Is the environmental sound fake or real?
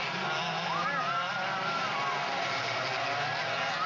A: real